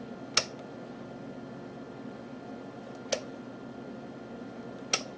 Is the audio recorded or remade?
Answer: recorded